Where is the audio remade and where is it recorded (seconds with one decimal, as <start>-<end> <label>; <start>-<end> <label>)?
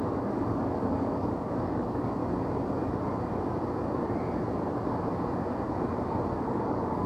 0.0-2.2 remade; 2.2-6.5 recorded; 6.5-7.1 remade